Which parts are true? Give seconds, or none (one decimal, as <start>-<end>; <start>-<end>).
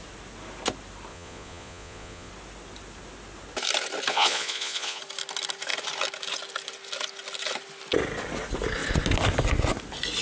0.0-1.1; 2.3-4.1; 5.0-10.2